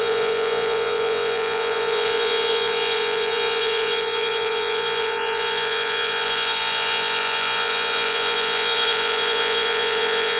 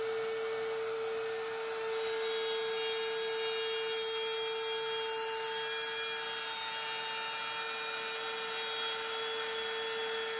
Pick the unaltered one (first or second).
second